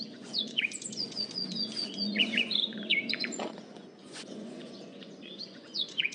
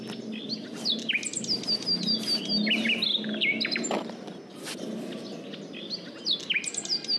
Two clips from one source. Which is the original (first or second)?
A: second